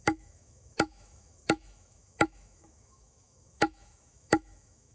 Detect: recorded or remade remade